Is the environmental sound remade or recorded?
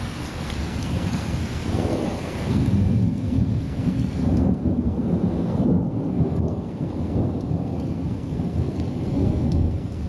remade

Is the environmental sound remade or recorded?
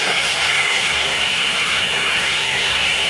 remade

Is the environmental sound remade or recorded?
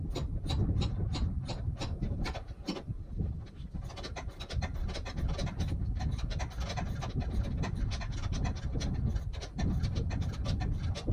recorded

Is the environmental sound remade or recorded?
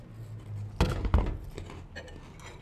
recorded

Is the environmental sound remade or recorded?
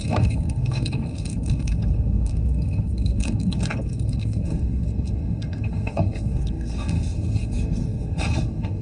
remade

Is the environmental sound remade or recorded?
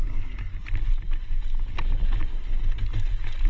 recorded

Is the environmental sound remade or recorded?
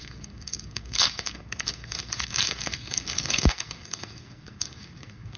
remade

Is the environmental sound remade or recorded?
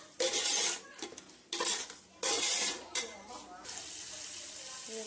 recorded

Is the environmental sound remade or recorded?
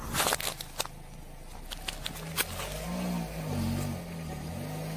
recorded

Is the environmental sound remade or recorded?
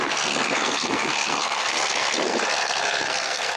remade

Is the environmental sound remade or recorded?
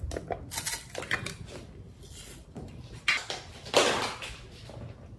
recorded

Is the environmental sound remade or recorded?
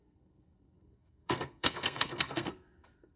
remade